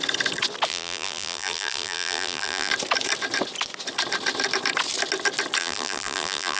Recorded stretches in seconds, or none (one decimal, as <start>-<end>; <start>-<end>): 0.0-0.7; 2.7-5.6

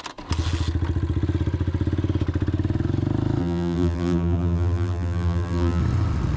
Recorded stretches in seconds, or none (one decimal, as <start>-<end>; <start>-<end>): 0.0-3.4; 5.8-6.4